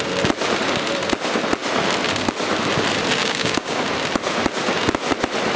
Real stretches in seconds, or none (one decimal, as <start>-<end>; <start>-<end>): 0.0-3.2; 3.8-5.6